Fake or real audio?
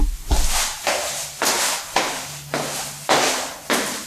real